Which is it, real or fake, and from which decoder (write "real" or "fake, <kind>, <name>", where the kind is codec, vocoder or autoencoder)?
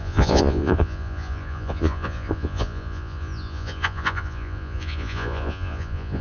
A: fake, vocoder, Vocos